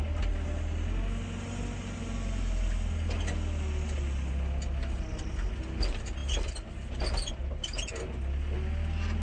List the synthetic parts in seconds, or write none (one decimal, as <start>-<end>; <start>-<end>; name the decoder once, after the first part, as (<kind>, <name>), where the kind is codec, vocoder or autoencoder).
none